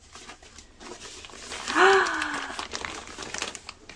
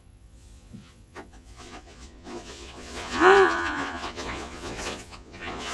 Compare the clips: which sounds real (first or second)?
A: first